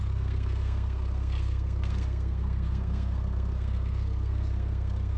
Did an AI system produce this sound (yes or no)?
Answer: yes